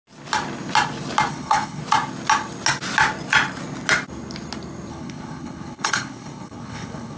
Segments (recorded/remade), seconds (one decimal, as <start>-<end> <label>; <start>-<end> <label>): 0.0-1.3 recorded; 1.3-1.8 remade; 1.8-4.9 recorded; 4.9-7.2 remade